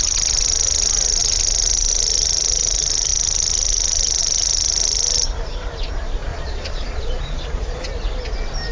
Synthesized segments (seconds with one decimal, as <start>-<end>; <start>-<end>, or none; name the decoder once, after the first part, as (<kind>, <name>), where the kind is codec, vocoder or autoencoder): 6.3-7.9 (vocoder, Vocos)